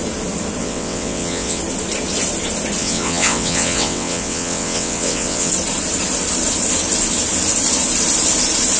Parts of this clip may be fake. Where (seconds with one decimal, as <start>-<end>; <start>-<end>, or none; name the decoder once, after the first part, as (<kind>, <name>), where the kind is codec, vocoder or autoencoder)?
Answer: 0.6-1.6 (vocoder, WaveNeXt); 2.8-5.5